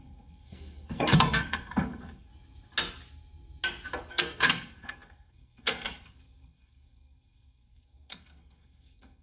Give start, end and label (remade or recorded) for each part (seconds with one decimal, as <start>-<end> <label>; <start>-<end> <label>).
0.0-2.3 remade; 2.3-4.1 recorded; 4.1-9.2 remade